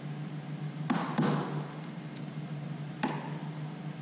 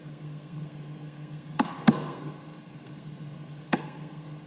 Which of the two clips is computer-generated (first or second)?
second